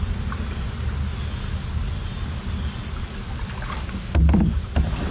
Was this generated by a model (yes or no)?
no